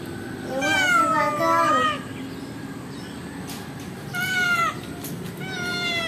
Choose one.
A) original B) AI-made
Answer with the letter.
A